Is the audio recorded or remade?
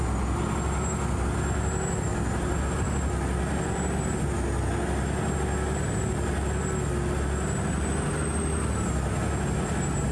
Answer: recorded